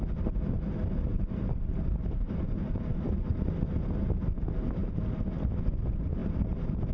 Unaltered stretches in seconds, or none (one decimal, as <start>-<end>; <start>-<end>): 0.0-1.1; 3.5-6.2

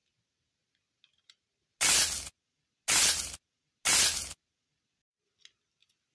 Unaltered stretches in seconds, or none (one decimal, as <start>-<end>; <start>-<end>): 0.0-6.1